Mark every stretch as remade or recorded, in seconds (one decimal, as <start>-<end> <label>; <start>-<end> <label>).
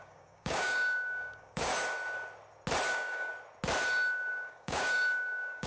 0.0-1.7 remade; 1.7-2.9 recorded; 2.9-3.3 remade; 3.3-4.3 recorded; 4.3-5.7 remade